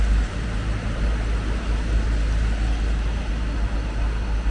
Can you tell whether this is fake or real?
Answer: real